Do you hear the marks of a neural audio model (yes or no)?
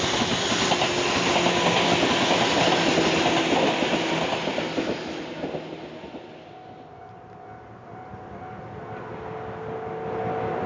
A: no